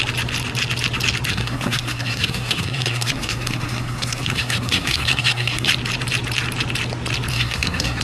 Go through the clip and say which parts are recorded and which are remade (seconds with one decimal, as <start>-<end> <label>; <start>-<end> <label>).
0.0-1.3 recorded; 1.3-5.7 remade; 5.7-7.3 recorded; 7.3-8.0 remade